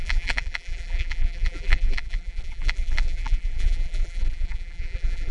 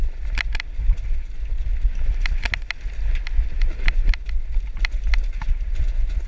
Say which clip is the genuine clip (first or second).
second